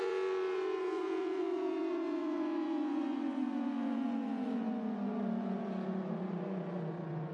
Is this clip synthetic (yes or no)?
yes